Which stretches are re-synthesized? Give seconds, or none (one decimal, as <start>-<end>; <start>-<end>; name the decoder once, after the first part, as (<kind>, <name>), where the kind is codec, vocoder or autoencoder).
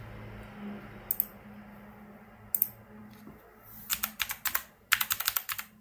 none